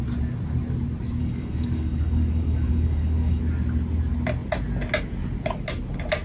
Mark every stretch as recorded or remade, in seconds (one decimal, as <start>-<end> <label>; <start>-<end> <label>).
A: 0.0-1.2 recorded; 1.2-3.4 remade; 3.4-6.2 recorded